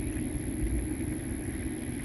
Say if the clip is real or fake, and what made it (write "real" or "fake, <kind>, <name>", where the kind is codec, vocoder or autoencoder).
real